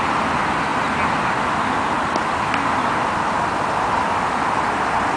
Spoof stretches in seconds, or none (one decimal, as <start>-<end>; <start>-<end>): none